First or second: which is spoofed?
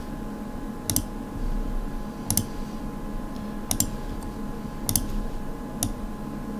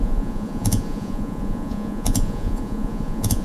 second